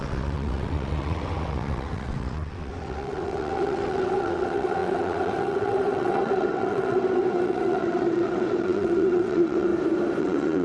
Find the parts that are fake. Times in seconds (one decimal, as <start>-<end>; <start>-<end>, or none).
0.0-9.7; 10.2-10.6